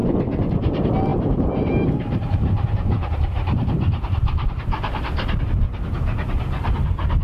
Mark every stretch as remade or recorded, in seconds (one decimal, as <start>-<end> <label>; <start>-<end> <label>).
0.0-1.1 recorded; 1.1-5.4 remade; 5.4-7.2 recorded